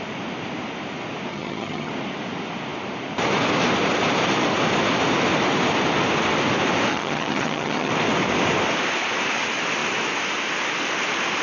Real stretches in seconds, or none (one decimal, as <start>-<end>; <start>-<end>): 0.0-1.3; 1.9-6.9; 7.9-11.4